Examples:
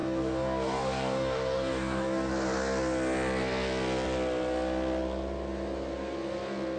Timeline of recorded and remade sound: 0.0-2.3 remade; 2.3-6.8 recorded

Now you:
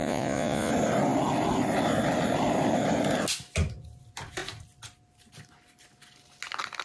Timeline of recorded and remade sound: 0.0-0.7 remade; 0.7-6.8 recorded

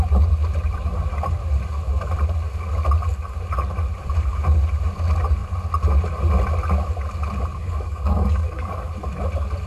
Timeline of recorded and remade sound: 0.0-7.5 recorded; 7.5-8.9 remade; 8.9-9.7 recorded

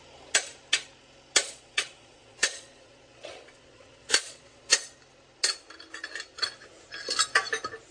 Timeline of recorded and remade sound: 0.0-1.4 recorded; 1.4-4.8 remade; 4.8-7.9 recorded

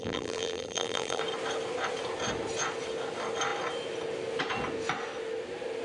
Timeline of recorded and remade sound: 0.0-1.2 remade; 1.2-5.8 recorded

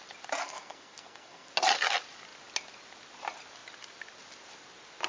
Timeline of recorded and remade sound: 0.0-0.4 recorded; 0.4-1.5 remade; 1.5-5.1 recorded

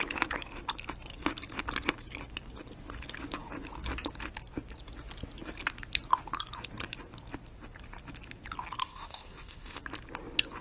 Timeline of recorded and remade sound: 0.0-8.8 recorded; 8.8-9.8 remade; 9.8-10.6 recorded